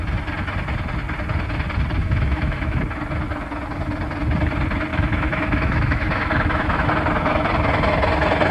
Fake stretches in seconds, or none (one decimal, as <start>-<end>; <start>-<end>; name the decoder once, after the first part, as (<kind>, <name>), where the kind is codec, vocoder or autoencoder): 2.0-2.8 (autoencoder, DAC-VAE); 4.9-6.9

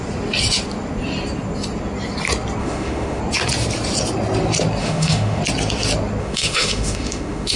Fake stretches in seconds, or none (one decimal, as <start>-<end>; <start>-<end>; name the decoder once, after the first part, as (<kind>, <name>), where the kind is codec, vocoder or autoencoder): 2.6-3.2 (autoencoder, DAC-VAE); 4.8-5.4; 6.2-7.6

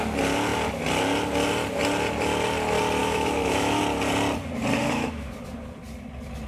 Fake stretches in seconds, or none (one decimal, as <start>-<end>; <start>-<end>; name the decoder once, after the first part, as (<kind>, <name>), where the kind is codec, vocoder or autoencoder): 3.0-3.8 (autoencoder, DAC-VAE); 4.8-5.3

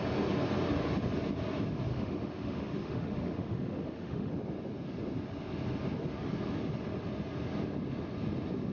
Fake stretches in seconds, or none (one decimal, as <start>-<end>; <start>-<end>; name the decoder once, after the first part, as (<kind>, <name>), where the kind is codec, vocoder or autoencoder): 1.9-4.3 (autoencoder, DAC-VAE)

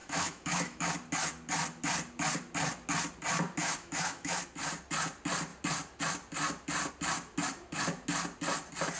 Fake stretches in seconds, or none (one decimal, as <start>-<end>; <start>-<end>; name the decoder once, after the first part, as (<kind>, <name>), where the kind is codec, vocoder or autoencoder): 0.0-0.9 (autoencoder, DAC-VAE); 3.6-4.4

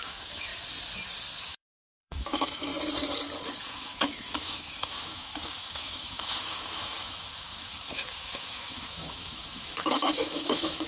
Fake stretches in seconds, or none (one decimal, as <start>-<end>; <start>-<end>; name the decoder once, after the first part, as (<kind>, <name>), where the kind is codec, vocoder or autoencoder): 0.0-0.5 (autoencoder, DAC-VAE); 1.4-2.7; 3.6-10.9

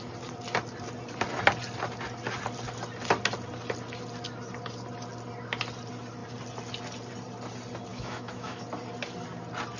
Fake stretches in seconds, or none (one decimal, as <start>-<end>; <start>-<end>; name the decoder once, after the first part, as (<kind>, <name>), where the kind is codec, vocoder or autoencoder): 7.9-8.6 (autoencoder, DAC-VAE)

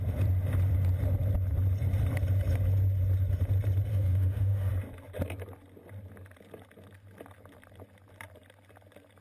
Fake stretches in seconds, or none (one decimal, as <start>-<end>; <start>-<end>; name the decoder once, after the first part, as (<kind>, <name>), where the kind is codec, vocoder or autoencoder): 3.9-4.7 (autoencoder, DAC-VAE)